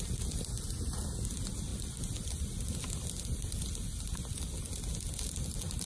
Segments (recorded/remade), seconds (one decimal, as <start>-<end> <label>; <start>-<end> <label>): 0.0-5.8 recorded